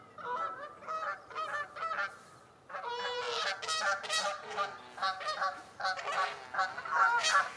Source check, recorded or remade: recorded